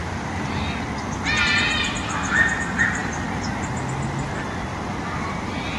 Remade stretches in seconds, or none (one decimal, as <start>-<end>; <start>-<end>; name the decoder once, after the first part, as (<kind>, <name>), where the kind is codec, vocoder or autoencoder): 0.0-0.8 (vocoder, BigVGAN v2); 4.7-5.8